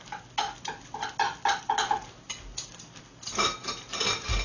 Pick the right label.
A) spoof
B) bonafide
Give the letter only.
B